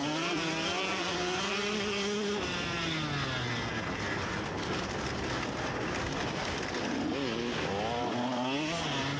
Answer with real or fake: real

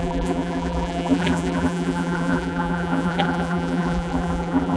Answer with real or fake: fake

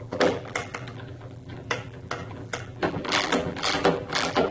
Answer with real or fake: fake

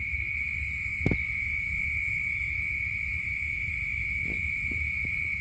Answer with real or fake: fake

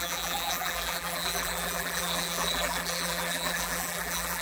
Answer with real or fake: fake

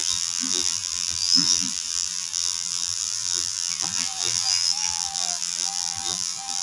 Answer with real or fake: fake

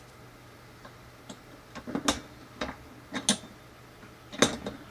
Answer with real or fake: real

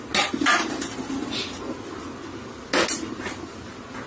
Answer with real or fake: real